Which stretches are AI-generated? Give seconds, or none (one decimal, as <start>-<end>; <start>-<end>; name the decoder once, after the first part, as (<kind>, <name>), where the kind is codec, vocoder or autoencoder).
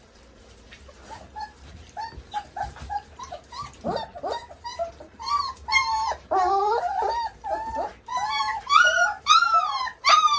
0.0-8.1 (vocoder, BigVGAN v2); 8.6-10.4